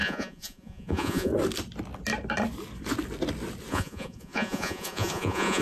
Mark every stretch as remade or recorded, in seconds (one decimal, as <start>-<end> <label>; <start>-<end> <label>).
0.0-1.3 remade; 1.3-3.7 recorded; 3.7-5.6 remade